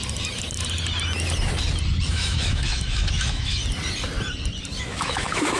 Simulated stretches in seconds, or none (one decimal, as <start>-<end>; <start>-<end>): 2.1-3.6; 4.8-5.6